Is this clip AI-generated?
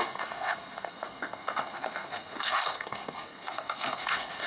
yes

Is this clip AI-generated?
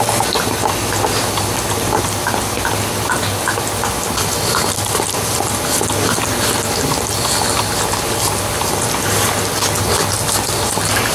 no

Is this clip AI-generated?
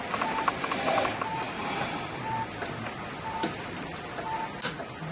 no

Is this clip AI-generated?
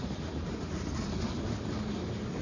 no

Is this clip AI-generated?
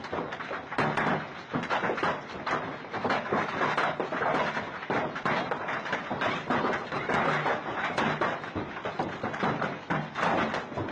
no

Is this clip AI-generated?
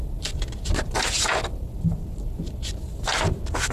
no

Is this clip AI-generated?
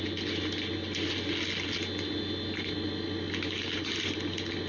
no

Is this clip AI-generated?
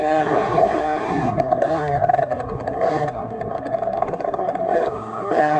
yes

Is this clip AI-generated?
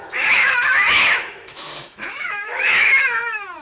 yes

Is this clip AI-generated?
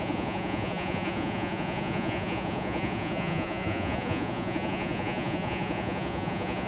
yes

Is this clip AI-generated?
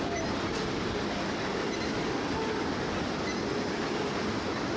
no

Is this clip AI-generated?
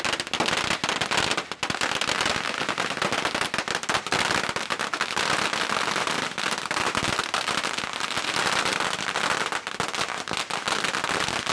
no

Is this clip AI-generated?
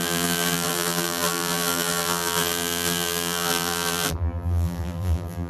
yes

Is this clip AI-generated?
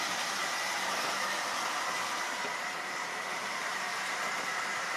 yes